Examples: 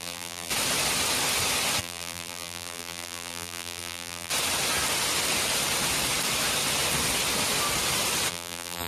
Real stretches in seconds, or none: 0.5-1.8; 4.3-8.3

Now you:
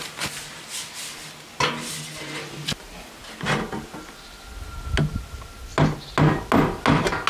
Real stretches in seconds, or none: 0.0-7.3

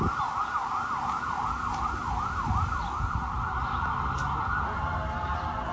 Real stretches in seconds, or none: 0.0-5.7